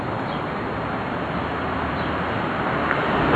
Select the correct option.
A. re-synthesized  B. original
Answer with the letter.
A